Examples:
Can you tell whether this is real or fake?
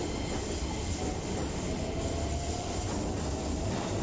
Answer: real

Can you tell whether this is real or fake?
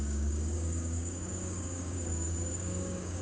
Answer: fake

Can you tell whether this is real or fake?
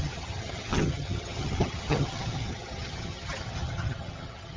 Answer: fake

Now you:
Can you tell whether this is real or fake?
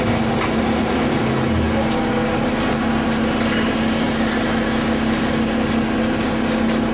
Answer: real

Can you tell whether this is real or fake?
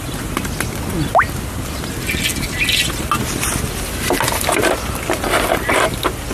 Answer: real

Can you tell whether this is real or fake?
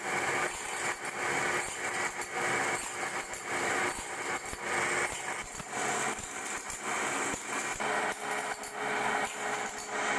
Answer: real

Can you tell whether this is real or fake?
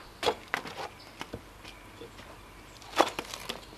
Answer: real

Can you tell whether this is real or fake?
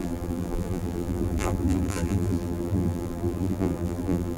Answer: fake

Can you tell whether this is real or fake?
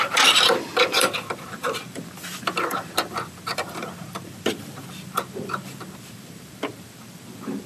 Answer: fake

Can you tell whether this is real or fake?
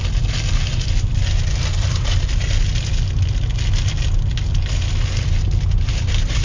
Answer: real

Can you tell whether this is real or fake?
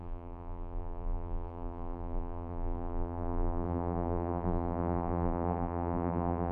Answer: fake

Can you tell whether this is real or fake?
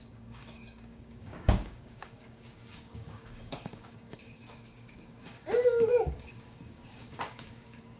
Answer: fake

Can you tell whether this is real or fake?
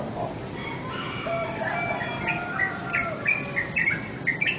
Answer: real